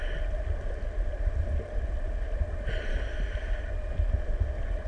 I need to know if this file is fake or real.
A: real